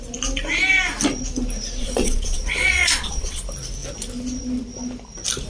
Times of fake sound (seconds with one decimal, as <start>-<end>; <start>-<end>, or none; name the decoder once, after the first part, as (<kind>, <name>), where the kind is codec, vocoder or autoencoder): 1.8-3.4 (vocoder, Vocos)